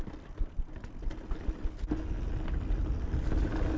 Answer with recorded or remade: recorded